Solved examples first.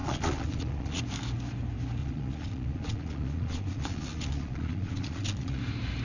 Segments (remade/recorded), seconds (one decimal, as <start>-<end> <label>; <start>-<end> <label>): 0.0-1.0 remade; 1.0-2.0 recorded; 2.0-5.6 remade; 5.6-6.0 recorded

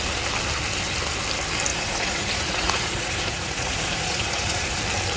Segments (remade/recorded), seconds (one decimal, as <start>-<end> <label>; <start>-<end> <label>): 0.0-1.7 recorded; 1.7-4.8 remade; 4.8-5.2 recorded

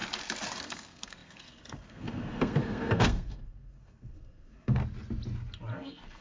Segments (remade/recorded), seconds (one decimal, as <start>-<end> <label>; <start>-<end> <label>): 0.0-0.6 recorded; 0.6-4.8 remade; 4.8-5.7 recorded; 5.7-6.2 remade

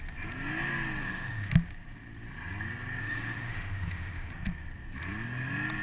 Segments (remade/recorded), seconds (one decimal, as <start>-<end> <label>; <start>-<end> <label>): 0.0-1.0 recorded; 1.0-1.5 remade; 1.5-3.0 recorded; 3.0-4.3 remade; 4.3-5.8 recorded

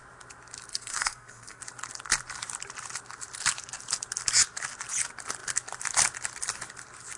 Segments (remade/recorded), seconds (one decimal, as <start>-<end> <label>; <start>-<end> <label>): 0.0-0.7 recorded; 0.7-1.6 remade; 1.6-7.2 recorded

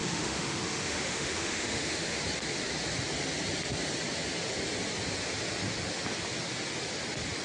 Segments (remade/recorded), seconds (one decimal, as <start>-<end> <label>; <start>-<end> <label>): 0.0-2.2 remade; 2.2-7.4 recorded